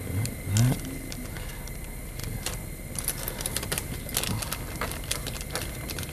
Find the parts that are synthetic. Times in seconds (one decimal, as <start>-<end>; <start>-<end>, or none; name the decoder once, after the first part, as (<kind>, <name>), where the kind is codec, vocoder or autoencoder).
none